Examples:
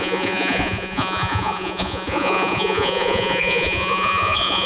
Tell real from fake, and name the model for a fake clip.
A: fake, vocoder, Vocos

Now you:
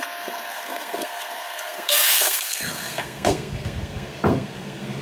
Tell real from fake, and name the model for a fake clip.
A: fake, codec, SNAC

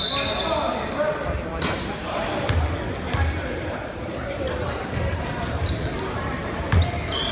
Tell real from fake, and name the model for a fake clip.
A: real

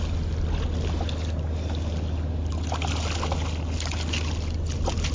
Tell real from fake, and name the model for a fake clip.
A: real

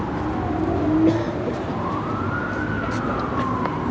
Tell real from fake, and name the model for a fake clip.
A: real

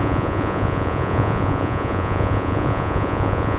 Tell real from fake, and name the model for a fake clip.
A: fake, vocoder, Vocos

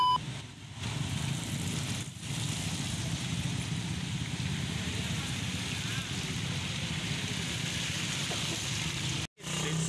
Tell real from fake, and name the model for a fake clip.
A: real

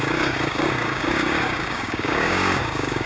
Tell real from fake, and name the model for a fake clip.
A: fake, codec, DAC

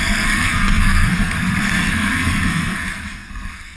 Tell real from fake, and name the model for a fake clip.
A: fake, codec, SNAC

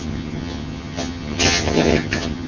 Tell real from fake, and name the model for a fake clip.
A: fake, vocoder, HiFi-GAN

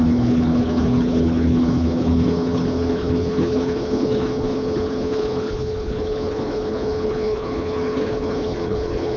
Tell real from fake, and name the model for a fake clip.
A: fake, codec, HILCodec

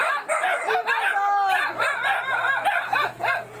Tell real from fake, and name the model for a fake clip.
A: real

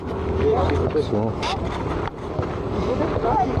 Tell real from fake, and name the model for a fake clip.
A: real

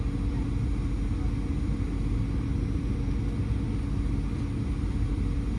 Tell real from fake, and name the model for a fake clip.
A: real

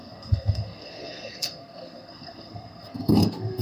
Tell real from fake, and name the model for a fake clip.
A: fake, codec, SNAC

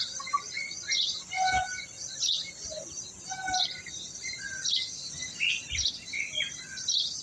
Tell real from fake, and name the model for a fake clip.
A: real